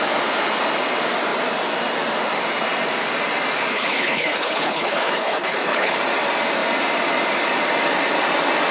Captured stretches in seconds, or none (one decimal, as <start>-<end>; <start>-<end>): 0.0-3.7; 5.9-8.7